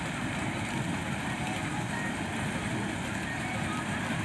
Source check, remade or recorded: remade